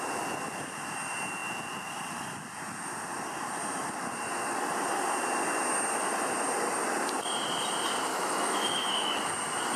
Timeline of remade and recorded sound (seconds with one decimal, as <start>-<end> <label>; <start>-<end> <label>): 0.0-8.1 recorded; 8.1-9.2 remade; 9.2-9.8 recorded